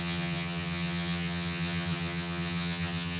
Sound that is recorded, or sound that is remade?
remade